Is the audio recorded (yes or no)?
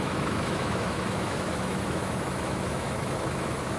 no